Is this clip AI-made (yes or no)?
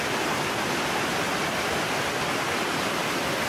no